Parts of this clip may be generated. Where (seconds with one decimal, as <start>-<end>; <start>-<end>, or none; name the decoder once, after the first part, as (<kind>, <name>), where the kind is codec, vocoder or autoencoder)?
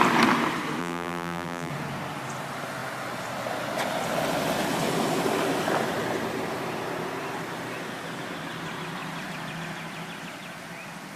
0.8-1.7 (vocoder, BigVGAN v2)